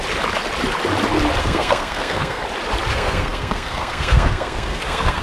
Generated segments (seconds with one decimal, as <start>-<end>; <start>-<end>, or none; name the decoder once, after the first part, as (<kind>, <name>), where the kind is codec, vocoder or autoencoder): 1.4-2.4 (codec, SNAC); 2.9-5.2